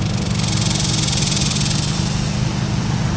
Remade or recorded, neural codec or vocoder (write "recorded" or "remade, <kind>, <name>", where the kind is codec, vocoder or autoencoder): recorded